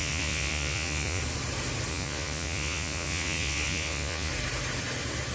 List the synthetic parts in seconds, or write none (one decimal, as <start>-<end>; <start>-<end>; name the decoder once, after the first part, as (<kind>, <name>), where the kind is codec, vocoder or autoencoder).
0.0-1.2 (vocoder, Vocos); 1.9-4.3